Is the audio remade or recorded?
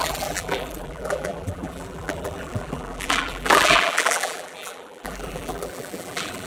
remade